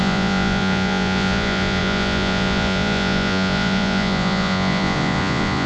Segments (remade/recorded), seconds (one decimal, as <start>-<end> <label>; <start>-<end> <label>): 0.0-5.7 remade